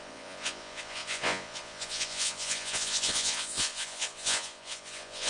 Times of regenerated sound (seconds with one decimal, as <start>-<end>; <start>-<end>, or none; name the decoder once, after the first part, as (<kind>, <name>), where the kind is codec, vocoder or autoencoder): 0.0-5.3 (vocoder, Vocos)